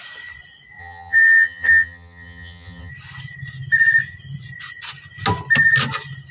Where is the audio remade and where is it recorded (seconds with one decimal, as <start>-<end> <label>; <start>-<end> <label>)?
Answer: 0.0-0.8 recorded; 0.8-2.9 remade; 2.9-6.3 recorded